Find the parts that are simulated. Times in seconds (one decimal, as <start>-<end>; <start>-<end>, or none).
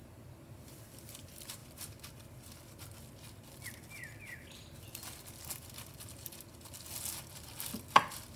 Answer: none